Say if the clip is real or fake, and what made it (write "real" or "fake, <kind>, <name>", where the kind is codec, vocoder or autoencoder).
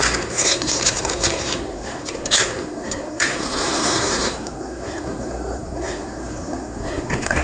fake, codec, SNAC